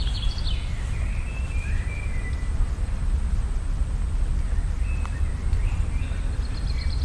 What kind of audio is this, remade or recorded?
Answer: recorded